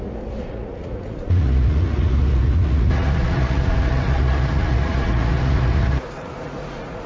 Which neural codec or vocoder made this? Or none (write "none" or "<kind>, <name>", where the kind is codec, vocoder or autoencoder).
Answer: vocoder, Vocos